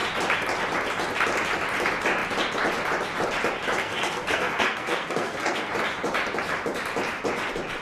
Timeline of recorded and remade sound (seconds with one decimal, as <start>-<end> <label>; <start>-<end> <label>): 0.0-3.8 recorded; 3.8-5.7 remade; 5.7-7.8 recorded